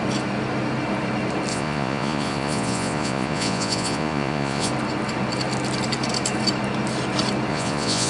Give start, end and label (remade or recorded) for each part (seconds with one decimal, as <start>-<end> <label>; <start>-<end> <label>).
0.0-1.5 recorded; 1.5-4.7 remade; 4.7-7.5 recorded; 7.5-8.1 remade